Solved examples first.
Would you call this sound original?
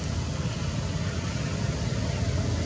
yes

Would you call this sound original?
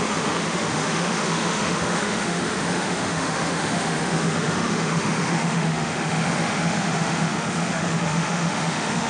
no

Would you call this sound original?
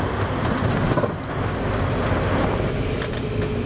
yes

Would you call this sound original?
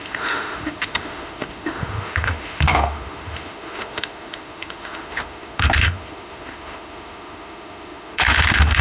no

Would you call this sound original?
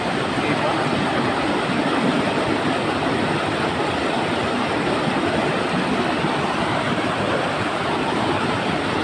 yes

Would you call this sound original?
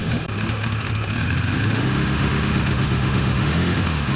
no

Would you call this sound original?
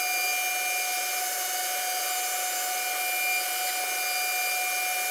yes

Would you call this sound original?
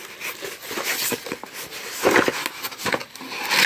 yes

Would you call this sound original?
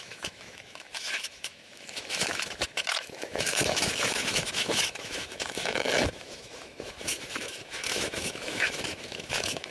no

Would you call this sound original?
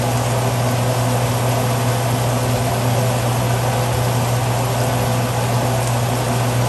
yes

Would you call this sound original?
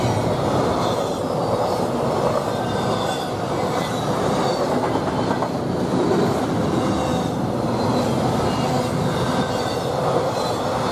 yes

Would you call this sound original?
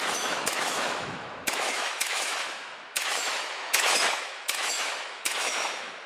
no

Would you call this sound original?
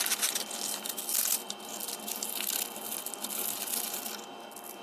yes